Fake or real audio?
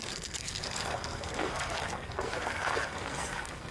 fake